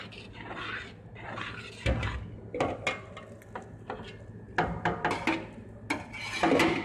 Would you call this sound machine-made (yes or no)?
no